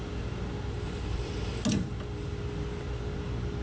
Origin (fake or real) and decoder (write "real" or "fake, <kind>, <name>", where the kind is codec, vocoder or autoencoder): real